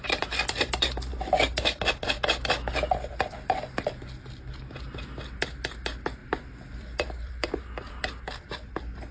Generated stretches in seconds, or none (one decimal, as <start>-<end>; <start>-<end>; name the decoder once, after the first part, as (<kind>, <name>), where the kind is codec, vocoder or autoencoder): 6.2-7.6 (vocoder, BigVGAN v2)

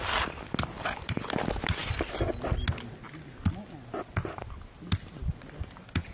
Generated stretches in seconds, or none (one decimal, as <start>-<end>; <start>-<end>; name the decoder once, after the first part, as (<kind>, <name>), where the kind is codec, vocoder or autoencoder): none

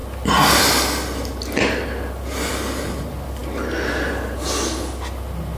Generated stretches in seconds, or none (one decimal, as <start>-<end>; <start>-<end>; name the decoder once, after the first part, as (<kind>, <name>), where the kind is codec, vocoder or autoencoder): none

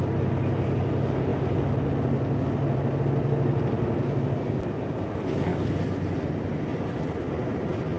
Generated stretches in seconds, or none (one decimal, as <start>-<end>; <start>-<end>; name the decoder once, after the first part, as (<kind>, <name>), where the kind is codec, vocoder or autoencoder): 5.5-6.1 (vocoder, BigVGAN v2); 6.7-7.3